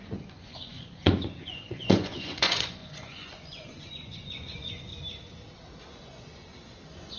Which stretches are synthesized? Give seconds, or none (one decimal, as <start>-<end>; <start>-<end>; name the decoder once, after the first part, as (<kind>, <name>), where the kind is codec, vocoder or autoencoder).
0.0-4.9 (vocoder, Vocos); 5.9-7.2